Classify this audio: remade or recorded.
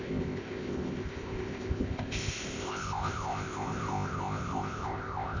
remade